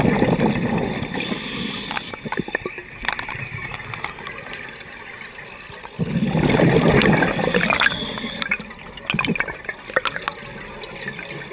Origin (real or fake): real